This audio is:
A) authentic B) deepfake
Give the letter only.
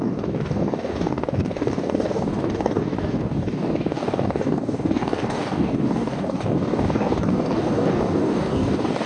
B